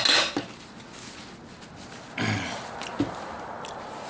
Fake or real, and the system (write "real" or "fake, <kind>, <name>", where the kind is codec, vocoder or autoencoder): real